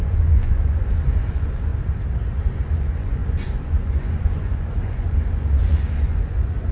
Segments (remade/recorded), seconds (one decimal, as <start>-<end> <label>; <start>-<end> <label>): 0.0-1.7 remade; 1.7-2.4 recorded; 2.4-6.7 remade